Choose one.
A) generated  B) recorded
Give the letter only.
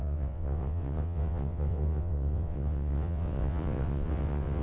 A